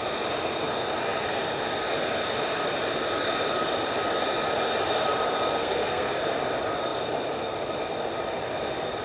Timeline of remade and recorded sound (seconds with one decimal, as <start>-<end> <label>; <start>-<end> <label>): 0.0-5.6 recorded; 5.6-6.2 remade; 6.2-9.0 recorded